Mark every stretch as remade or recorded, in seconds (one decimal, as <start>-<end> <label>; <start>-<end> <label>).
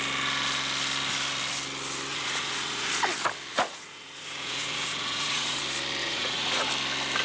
0.0-2.1 recorded; 2.1-2.9 remade; 2.9-3.5 recorded; 3.5-5.6 remade; 5.6-6.0 recorded; 6.0-6.7 remade; 6.7-7.2 recorded